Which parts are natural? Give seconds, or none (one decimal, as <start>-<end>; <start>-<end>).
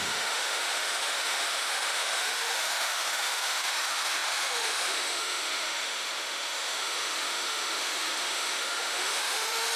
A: none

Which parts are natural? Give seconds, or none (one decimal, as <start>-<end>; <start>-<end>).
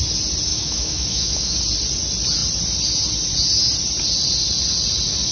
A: 0.0-0.5; 1.6-5.3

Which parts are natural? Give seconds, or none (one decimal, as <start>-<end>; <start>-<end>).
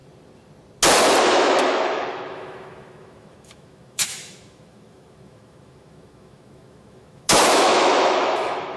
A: 0.0-1.2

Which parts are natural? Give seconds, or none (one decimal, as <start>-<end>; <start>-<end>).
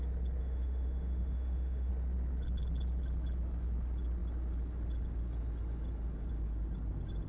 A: 0.0-0.4; 1.9-7.3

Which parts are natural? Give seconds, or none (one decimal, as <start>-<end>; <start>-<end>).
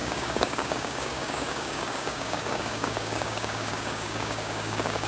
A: none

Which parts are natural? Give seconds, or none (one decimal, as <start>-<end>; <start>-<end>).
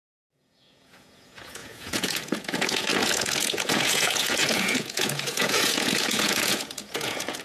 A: none